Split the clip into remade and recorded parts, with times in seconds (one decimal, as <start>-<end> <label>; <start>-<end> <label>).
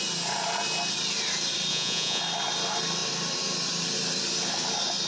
0.0-1.7 recorded; 1.7-2.2 remade; 2.2-5.1 recorded